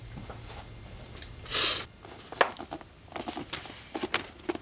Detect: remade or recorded recorded